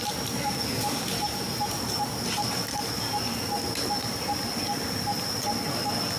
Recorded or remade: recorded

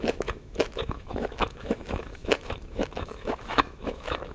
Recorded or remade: remade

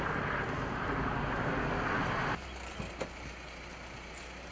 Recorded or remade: recorded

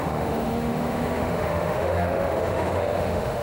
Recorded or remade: remade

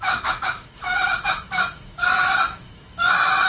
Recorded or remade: remade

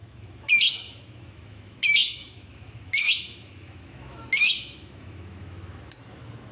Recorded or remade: remade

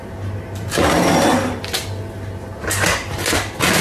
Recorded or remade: recorded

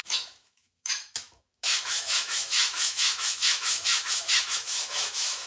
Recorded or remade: remade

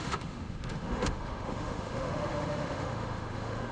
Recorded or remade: remade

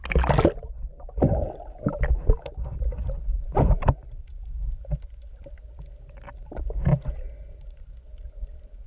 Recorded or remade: recorded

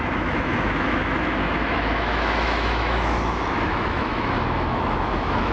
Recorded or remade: remade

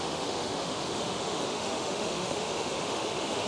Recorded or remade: remade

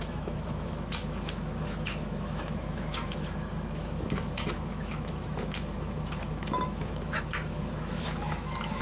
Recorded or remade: remade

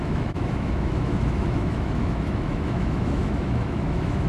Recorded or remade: remade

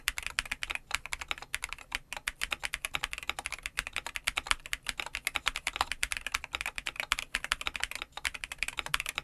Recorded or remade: recorded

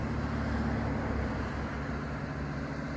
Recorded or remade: recorded